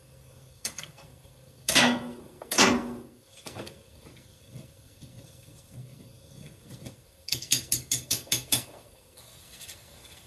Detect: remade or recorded remade